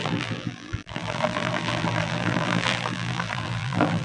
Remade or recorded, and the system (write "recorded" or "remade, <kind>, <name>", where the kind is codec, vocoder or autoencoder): remade, vocoder, BigVGAN v2